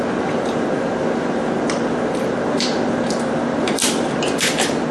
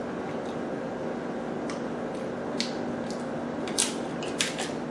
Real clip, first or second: second